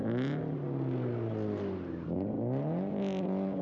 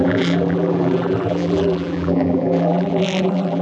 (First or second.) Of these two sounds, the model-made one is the second